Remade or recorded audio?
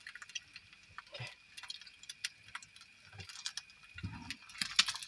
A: recorded